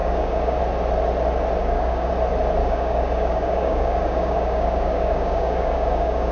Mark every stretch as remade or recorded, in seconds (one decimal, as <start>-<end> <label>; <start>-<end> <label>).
0.0-0.6 remade; 0.6-1.6 recorded; 1.6-2.1 remade; 2.1-2.6 recorded; 2.6-6.3 remade